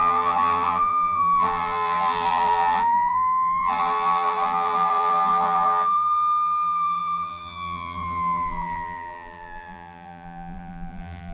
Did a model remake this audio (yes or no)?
yes